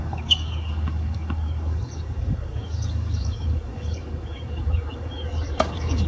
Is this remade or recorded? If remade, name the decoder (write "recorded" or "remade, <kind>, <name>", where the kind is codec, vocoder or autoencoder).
remade, codec, DAC